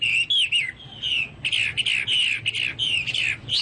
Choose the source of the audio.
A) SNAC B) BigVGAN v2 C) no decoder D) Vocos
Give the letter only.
C